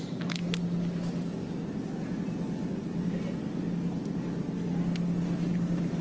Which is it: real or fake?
real